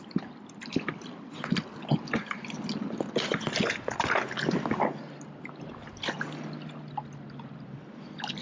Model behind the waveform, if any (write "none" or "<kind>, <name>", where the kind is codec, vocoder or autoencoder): none